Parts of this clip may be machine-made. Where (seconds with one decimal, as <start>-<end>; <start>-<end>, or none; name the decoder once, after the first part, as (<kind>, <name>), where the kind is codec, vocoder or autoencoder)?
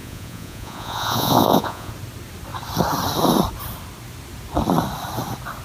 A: 0.0-1.9 (vocoder, Vocos)